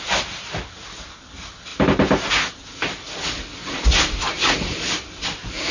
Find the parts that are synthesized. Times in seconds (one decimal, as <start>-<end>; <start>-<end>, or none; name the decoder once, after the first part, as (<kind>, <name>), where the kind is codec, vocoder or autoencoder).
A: none